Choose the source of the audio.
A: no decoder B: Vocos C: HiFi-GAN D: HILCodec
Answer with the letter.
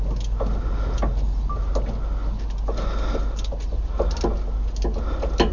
A